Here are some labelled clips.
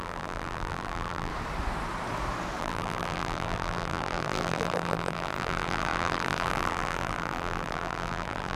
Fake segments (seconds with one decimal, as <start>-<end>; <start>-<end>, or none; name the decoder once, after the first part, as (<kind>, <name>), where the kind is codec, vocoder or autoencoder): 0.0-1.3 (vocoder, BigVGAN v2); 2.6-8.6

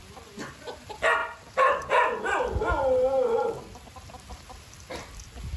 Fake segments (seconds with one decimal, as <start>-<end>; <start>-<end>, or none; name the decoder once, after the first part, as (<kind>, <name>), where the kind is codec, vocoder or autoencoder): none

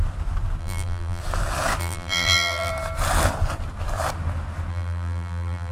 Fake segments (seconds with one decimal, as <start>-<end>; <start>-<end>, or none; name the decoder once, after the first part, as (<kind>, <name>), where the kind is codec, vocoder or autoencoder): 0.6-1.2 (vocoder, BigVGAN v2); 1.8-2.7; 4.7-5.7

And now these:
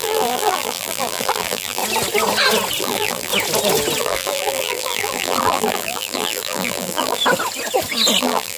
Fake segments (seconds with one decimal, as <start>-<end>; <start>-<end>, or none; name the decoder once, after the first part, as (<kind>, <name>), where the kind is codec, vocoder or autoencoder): 0.0-1.8 (vocoder, BigVGAN v2); 2.8-3.3; 4.0-7.2; 8.2-8.6